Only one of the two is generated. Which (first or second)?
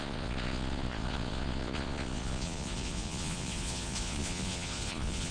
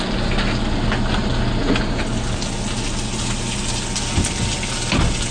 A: first